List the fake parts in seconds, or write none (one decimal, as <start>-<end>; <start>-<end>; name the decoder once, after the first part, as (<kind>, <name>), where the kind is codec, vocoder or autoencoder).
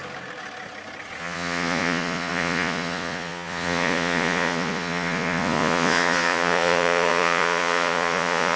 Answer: 1.2-8.6 (vocoder, Vocos)